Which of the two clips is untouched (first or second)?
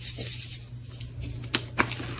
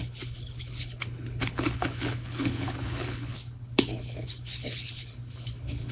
first